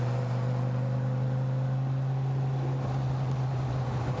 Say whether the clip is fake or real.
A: real